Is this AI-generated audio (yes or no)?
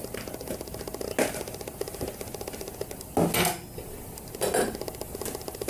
no